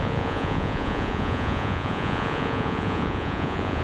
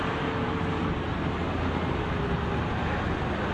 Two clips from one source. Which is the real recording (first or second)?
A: second